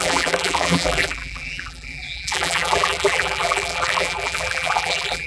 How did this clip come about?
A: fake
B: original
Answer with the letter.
A